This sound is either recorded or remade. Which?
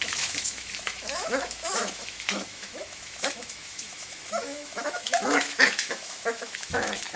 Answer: remade